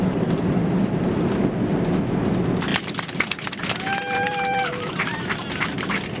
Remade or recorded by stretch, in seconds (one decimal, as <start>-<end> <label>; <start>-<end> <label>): 0.0-2.7 recorded; 2.7-6.2 remade